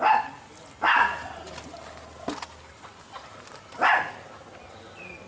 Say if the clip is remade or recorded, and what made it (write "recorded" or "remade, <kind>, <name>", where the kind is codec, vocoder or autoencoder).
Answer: recorded